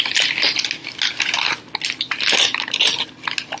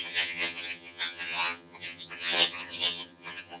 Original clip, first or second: first